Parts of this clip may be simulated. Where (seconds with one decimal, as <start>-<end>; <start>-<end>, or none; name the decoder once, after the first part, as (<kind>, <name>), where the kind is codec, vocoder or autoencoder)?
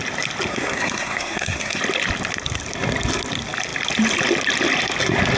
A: 0.5-1.8 (codec, SNAC)